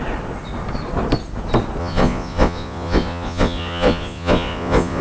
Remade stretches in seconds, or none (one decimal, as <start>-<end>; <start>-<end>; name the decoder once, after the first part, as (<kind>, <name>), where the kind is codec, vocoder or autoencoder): 1.8-5.0 (vocoder, Vocos)